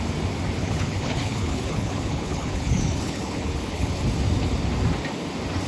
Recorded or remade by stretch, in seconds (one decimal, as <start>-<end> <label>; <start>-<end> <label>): 0.0-0.6 recorded; 0.6-4.0 remade; 4.0-5.7 recorded